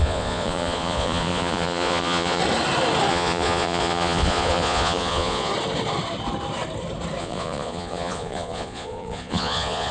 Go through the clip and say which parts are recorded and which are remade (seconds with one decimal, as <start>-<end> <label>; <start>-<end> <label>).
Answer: 0.0-2.4 remade; 2.4-3.1 recorded; 3.1-5.5 remade; 5.5-7.2 recorded; 7.2-9.9 remade